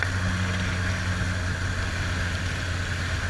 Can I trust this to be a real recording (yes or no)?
yes